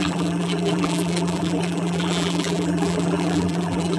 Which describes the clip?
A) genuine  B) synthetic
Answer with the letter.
B